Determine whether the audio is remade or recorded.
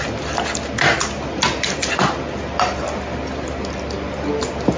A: recorded